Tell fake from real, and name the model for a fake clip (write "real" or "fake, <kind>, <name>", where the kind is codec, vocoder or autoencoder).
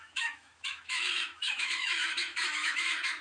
fake, autoencoder, DAC-VAE